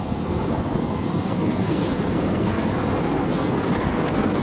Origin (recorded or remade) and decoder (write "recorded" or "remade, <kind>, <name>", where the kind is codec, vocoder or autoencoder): remade, codec, SNAC